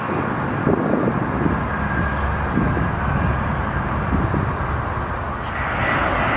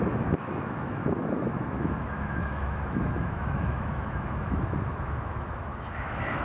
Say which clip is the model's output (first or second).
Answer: second